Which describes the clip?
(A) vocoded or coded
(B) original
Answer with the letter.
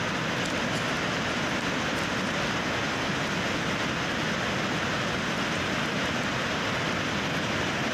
B